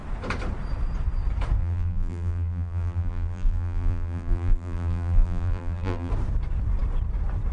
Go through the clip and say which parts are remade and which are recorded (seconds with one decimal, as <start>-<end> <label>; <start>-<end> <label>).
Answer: 0.0-1.6 recorded; 1.6-6.1 remade; 6.1-7.5 recorded